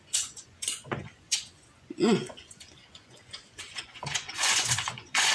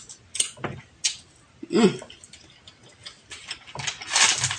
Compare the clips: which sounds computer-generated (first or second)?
first